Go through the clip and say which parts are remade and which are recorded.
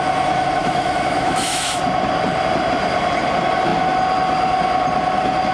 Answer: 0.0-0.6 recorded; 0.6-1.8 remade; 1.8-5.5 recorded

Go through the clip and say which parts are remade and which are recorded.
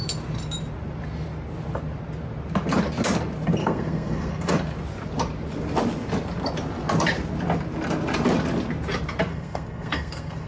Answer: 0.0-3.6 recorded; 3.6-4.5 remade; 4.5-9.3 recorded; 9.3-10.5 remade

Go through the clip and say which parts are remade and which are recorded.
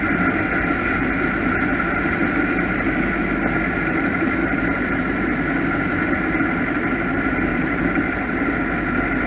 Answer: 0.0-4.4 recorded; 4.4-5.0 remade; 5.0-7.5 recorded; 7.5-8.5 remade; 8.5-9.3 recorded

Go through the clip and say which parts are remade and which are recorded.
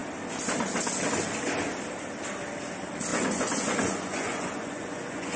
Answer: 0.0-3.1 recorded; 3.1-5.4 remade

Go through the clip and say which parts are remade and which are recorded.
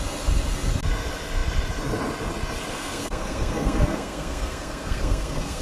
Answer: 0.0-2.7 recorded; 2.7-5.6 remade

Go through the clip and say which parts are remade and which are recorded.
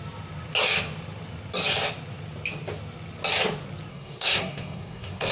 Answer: 0.0-3.9 recorded; 3.9-5.3 remade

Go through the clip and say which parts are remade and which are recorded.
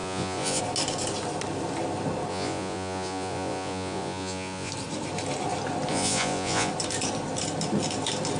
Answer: 0.0-0.6 remade; 0.6-2.3 recorded; 2.3-4.7 remade; 4.7-5.9 recorded; 5.9-6.7 remade; 6.7-8.4 recorded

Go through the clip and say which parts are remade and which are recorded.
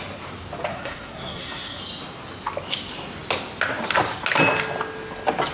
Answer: 0.0-0.7 recorded; 0.7-1.8 remade; 1.8-5.5 recorded